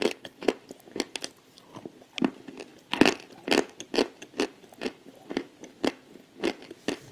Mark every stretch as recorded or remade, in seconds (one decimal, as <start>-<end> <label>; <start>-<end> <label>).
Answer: 0.0-7.1 recorded